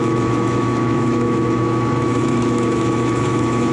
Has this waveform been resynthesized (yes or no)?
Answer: yes